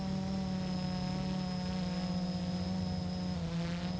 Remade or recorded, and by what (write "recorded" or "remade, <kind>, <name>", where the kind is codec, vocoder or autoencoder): recorded